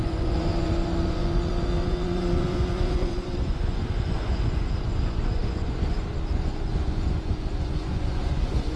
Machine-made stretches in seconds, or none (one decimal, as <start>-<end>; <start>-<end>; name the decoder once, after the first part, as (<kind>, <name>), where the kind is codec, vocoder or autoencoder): 0.0-8.8 (vocoder, Vocos)